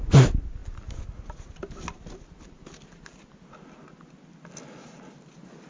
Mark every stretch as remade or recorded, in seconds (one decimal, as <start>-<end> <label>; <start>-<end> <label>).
0.0-5.7 recorded